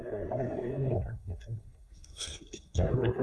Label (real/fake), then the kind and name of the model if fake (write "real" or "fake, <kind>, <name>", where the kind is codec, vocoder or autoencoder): fake, codec, SNAC